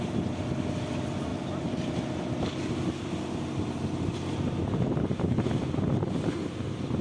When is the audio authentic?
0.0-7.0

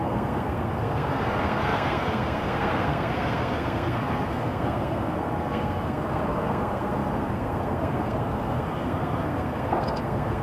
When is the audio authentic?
none